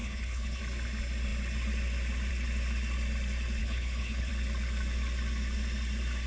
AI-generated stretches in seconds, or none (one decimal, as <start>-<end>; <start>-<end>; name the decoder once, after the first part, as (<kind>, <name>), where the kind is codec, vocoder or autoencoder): 0.0-0.6 (codec, HILCodec); 3.6-4.3